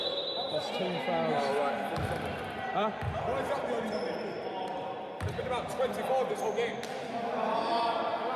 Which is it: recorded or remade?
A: recorded